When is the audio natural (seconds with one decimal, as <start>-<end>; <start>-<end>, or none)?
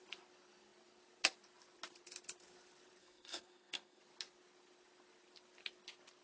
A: 0.0-3.0; 4.0-6.2